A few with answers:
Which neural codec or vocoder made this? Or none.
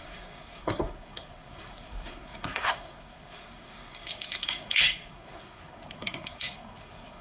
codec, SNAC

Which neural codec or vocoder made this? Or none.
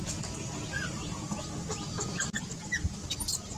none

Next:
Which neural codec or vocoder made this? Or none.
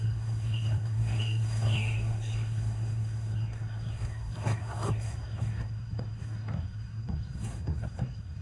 codec, SNAC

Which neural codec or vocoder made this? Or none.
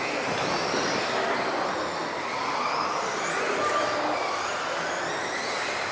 none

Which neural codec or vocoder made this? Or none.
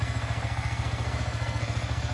codec, SNAC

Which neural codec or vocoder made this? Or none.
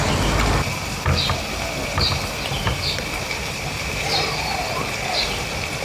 none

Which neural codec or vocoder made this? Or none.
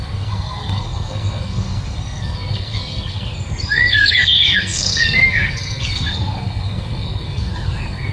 codec, SNAC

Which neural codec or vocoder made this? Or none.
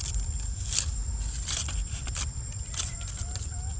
none